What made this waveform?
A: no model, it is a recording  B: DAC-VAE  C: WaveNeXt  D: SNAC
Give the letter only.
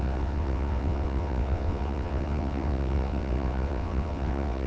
C